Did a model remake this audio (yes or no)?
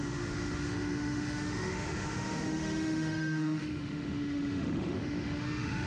yes